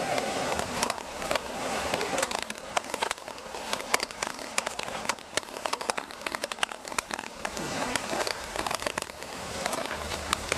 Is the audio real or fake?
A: fake